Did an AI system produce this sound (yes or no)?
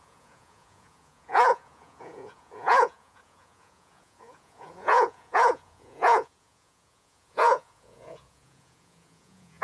yes